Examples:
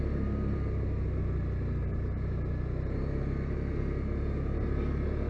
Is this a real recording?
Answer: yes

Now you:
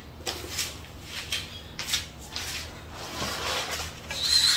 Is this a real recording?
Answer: yes